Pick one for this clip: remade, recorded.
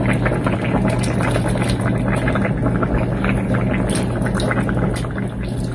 recorded